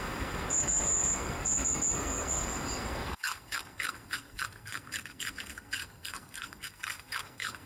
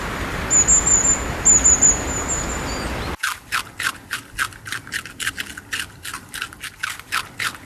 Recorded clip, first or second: second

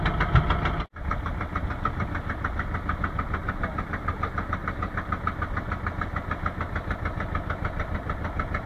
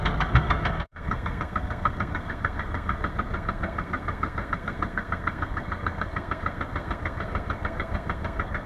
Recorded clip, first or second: first